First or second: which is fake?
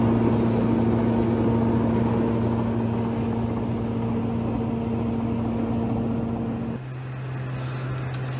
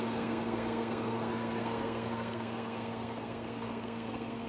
second